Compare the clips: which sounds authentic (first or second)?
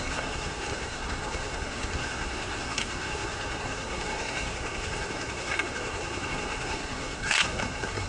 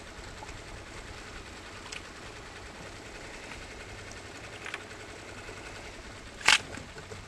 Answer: second